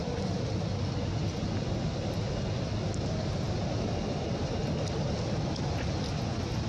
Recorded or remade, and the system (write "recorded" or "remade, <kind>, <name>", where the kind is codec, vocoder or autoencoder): recorded